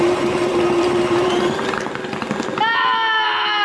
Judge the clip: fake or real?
real